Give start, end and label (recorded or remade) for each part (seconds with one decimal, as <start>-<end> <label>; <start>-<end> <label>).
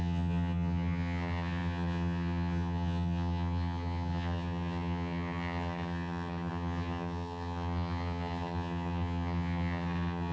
0.0-10.3 remade